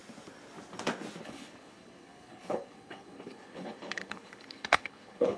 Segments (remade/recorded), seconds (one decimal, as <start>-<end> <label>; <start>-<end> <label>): 0.0-1.2 recorded; 1.2-5.4 remade